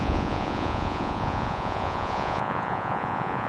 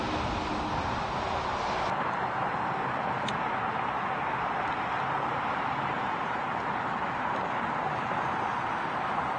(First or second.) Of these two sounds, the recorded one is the second